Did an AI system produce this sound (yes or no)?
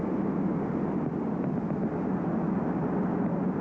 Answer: no